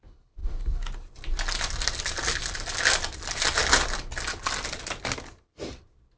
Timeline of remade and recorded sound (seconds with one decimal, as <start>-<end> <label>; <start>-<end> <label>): 0.0-6.2 recorded